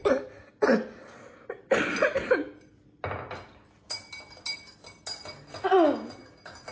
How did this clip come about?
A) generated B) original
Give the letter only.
B